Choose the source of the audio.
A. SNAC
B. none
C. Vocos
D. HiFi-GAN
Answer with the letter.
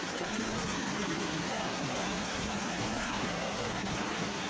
A